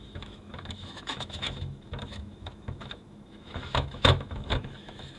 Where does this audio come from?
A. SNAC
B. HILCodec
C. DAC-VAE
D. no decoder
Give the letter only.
C